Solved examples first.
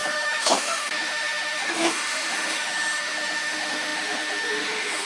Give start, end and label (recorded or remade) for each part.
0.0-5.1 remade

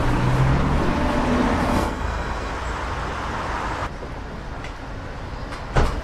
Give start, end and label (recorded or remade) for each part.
0.0-1.7 recorded; 1.7-2.5 remade; 2.5-6.0 recorded

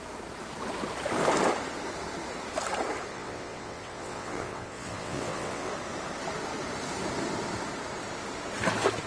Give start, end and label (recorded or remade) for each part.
0.0-3.1 recorded; 3.1-5.7 remade; 5.7-9.1 recorded

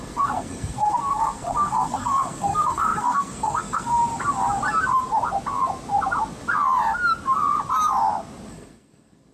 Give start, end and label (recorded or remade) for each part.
0.0-4.0 remade; 4.0-8.5 recorded; 8.5-9.3 remade

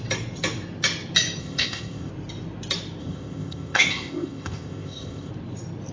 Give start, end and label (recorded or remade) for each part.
0.0-1.4 recorded; 1.4-2.1 remade; 2.1-3.0 recorded; 3.0-5.3 remade; 5.3-5.9 recorded

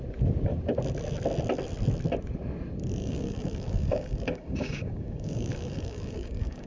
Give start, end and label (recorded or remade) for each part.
0.0-3.0 recorded; 3.0-6.7 remade